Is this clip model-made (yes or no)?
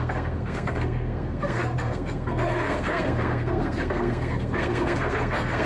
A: yes